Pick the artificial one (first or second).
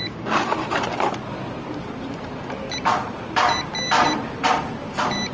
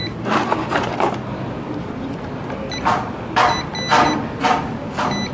first